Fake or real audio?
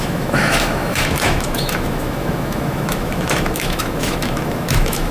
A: fake